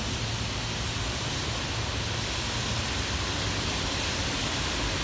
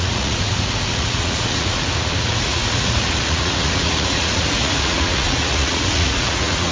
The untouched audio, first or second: first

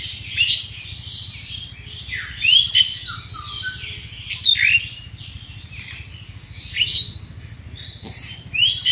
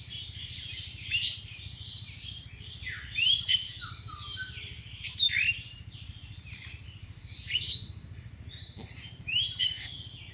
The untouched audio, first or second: first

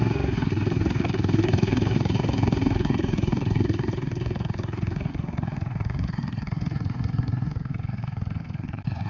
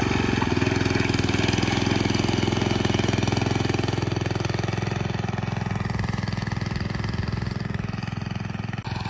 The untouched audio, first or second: second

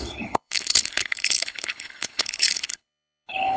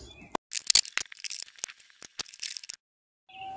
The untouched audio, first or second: second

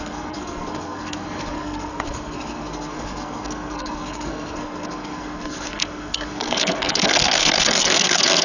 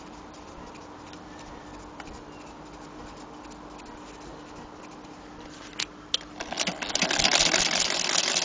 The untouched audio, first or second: second